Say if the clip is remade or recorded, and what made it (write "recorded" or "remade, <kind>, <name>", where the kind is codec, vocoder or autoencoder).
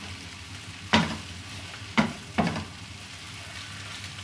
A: recorded